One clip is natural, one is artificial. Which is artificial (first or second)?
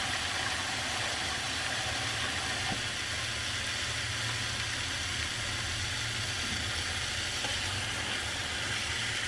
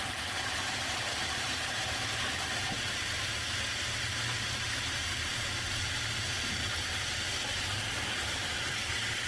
second